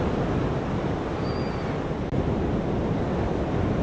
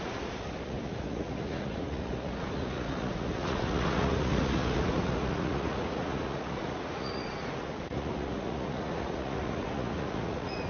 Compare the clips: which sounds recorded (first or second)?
first